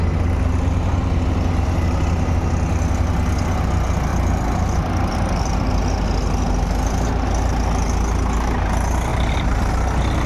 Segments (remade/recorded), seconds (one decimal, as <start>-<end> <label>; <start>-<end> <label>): 0.0-4.1 recorded; 4.1-5.7 remade; 5.7-9.1 recorded; 9.1-9.7 remade; 9.7-10.3 recorded